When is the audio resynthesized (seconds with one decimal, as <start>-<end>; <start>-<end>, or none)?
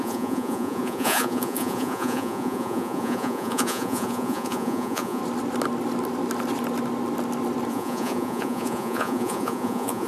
0.0-5.2; 7.7-10.1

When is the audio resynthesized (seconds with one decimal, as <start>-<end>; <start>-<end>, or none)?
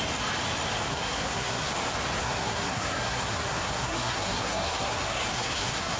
0.9-1.7; 2.2-6.0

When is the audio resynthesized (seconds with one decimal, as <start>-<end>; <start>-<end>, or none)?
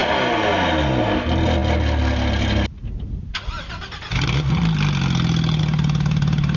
none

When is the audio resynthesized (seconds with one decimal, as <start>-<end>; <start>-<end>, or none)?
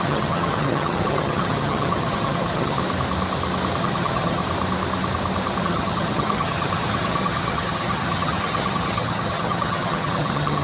0.0-2.8; 3.8-4.4; 5.6-10.6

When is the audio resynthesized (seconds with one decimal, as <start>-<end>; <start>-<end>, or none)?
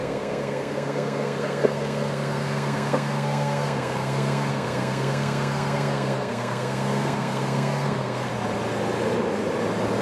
0.0-8.3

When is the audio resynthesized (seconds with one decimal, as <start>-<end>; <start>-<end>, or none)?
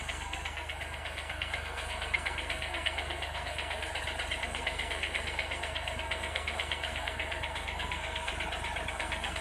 0.0-3.9; 4.4-8.3; 8.9-9.4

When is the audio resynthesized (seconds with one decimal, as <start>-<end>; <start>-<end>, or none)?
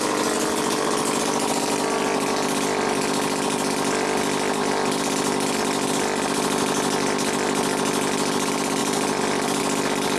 8.8-9.6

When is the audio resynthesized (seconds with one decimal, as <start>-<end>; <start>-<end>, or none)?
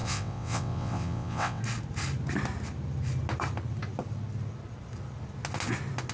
0.0-1.6